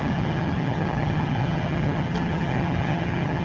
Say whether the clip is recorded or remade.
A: remade